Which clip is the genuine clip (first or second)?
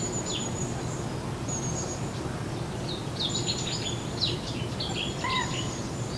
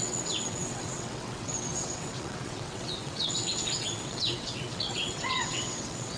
first